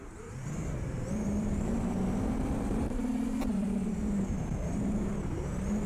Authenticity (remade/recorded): remade